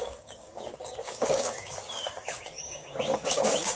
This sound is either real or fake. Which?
fake